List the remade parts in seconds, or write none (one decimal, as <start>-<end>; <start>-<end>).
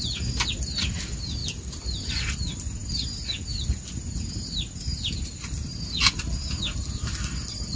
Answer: none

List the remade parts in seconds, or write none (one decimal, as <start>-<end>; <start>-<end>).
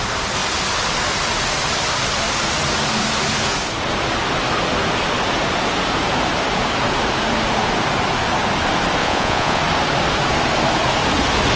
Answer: 9.0-9.6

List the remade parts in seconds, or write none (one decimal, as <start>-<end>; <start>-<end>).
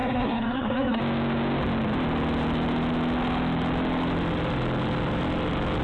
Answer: 0.0-1.0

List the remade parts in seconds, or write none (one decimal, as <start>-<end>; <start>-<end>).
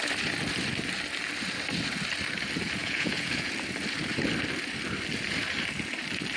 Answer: 2.8-3.5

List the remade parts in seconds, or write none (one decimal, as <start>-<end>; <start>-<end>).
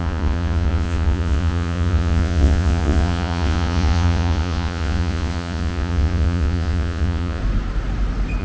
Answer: 0.0-7.4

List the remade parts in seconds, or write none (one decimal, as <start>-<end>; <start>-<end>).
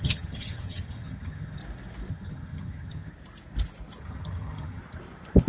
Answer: 0.0-1.6; 2.1-3.1; 4.0-4.8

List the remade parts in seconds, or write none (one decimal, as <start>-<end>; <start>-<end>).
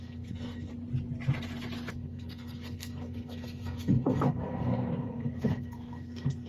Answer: 0.0-0.7; 1.9-6.5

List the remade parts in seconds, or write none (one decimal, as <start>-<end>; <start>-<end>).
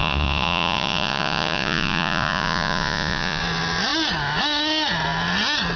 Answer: 0.0-3.4